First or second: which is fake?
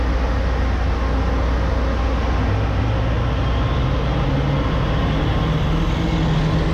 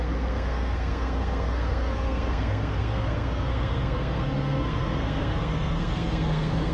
second